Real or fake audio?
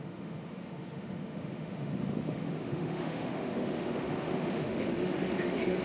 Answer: fake